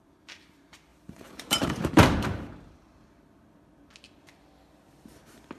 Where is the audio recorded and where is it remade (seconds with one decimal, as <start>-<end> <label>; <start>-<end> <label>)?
0.0-0.9 recorded; 0.9-2.5 remade; 2.5-5.6 recorded